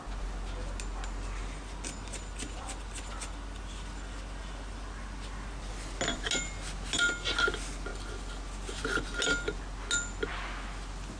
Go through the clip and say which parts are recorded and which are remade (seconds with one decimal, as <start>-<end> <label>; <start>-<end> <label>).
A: 0.0-1.4 recorded; 1.4-5.7 remade; 5.7-11.2 recorded